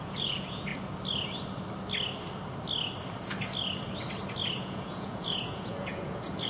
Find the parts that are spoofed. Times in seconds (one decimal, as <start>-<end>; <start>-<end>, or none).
0.0-0.7; 4.6-6.5